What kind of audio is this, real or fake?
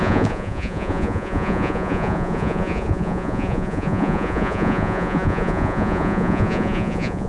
fake